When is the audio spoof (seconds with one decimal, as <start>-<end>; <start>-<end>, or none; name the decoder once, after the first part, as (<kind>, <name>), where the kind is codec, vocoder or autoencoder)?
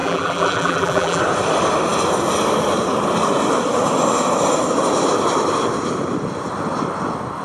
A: 0.0-1.2 (vocoder, BigVGAN v2)